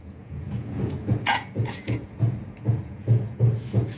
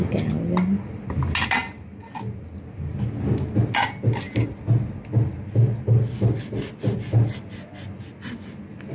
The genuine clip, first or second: second